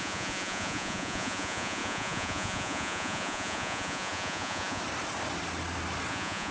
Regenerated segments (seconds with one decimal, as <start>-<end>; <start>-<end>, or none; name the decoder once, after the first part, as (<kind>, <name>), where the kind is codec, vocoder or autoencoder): 0.0-4.8 (vocoder, Vocos); 6.1-6.5

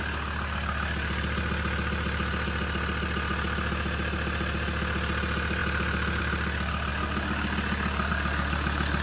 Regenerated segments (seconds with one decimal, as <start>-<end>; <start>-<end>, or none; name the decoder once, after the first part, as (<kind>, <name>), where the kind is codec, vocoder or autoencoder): none

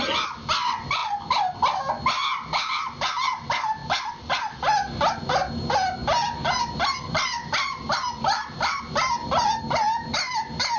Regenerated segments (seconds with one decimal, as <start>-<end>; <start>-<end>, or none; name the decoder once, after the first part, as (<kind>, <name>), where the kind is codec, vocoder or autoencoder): none

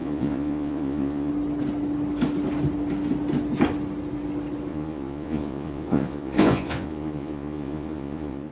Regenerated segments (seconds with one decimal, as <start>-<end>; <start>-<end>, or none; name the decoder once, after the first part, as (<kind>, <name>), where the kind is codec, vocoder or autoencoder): 0.0-1.3 (vocoder, Vocos); 4.7-8.5

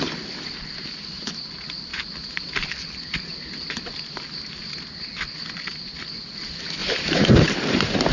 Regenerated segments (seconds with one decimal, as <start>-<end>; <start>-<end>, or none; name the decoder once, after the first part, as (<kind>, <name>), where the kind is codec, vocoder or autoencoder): none